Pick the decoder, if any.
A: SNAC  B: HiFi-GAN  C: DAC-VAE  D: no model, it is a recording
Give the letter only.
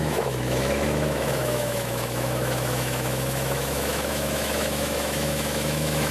C